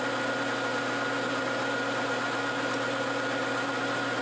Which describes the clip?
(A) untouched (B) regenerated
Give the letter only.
A